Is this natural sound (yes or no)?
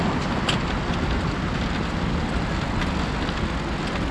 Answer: yes